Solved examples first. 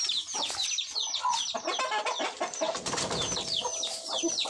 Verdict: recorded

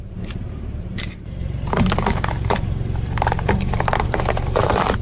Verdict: remade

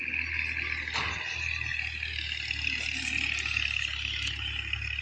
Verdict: recorded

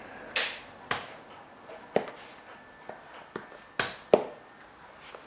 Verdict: recorded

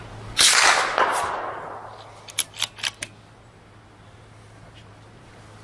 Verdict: recorded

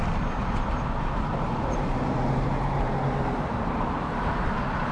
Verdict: remade